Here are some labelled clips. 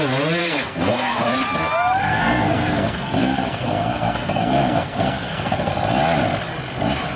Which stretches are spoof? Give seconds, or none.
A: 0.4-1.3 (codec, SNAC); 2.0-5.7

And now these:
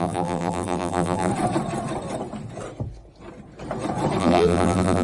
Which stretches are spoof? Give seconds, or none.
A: 0.0-1.3 (vocoder, BigVGAN v2); 4.2-5.0